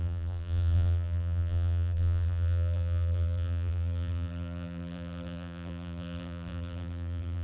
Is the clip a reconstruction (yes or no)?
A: yes